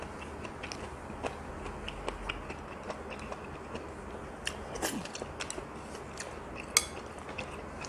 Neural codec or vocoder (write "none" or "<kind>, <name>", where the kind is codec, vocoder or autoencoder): none